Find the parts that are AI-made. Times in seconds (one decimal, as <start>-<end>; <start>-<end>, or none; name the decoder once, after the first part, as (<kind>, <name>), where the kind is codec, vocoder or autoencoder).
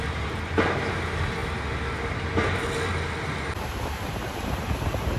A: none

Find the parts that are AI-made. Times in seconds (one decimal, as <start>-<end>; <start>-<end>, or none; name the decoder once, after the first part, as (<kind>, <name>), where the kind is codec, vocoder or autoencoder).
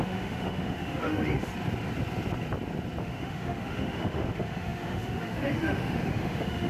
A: 0.0-1.5 (autoencoder, DAC-VAE); 3.0-6.7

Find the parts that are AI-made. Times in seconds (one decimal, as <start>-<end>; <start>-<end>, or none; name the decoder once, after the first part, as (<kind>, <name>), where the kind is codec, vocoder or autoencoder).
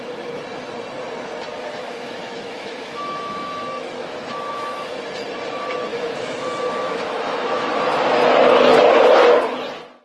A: 1.5-4.9 (autoencoder, DAC-VAE); 5.9-7.7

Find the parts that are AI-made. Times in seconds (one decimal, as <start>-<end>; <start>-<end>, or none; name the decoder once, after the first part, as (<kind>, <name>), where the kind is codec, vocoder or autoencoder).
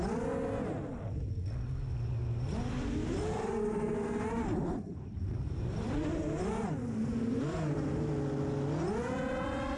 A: 3.0-8.1 (vocoder, BigVGAN v2)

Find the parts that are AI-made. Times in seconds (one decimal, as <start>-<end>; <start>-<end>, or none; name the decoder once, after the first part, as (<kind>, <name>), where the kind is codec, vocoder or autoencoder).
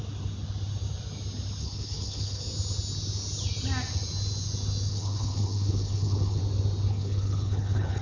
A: 1.6-2.4 (codec, HILCodec); 4.9-6.4; 6.9-8.0